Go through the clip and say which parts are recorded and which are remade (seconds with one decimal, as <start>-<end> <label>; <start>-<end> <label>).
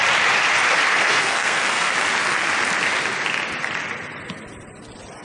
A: 0.0-0.9 recorded; 0.9-1.9 remade; 1.9-5.2 recorded